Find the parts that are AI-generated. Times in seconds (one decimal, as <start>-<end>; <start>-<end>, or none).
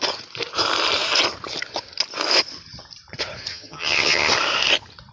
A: 3.5-4.3